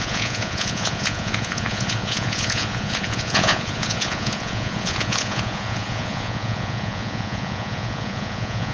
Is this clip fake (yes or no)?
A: yes